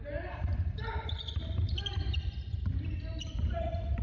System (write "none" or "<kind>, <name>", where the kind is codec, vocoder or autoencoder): none